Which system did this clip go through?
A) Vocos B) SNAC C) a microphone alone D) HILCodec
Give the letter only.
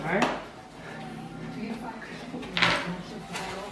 C